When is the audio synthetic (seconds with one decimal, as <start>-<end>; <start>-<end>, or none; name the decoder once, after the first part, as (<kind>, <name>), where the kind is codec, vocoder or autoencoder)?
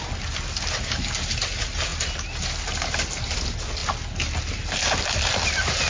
none